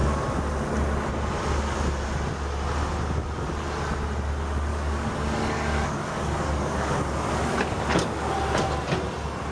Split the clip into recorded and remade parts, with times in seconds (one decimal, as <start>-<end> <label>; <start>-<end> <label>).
0.0-4.7 recorded; 4.7-8.3 remade; 8.3-9.5 recorded